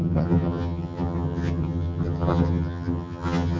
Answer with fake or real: fake